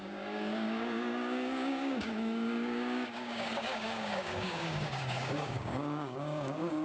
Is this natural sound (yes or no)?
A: no